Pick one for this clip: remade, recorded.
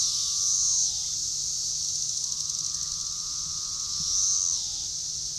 recorded